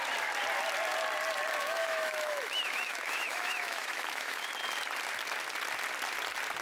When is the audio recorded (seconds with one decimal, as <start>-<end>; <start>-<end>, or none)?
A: 0.0-1.6; 4.4-6.6